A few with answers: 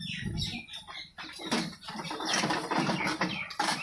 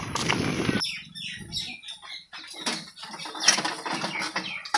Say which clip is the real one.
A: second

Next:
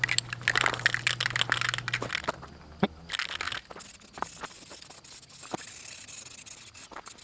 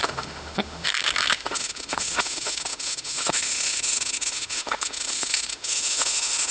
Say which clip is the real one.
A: first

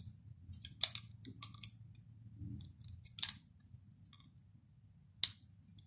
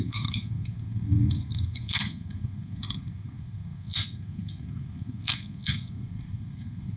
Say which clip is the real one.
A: first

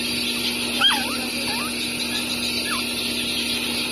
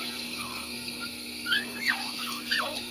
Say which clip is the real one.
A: first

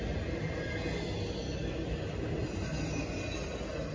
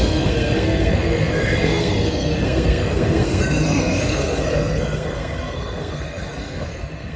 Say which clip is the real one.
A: first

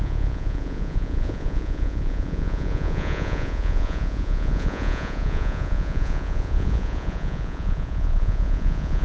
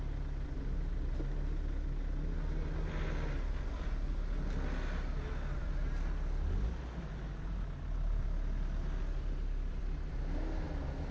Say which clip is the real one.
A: second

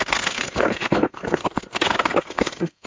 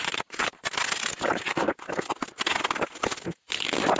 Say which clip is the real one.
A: second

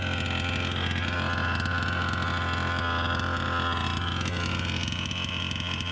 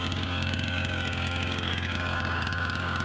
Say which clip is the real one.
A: first